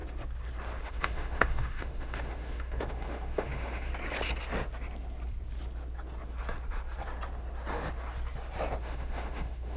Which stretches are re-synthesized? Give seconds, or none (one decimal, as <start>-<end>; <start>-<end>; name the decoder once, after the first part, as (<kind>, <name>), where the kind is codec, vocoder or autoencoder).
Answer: 0.8-3.9 (autoencoder, DAC-VAE); 8.8-9.8